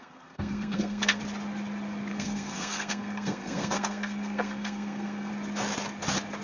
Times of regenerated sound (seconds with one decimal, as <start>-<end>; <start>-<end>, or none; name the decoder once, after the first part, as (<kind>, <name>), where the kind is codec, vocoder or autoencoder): 0.0-1.2 (codec, SNAC); 2.1-5.3